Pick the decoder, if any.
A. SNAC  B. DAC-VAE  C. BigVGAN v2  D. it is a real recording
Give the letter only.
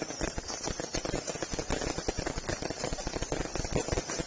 D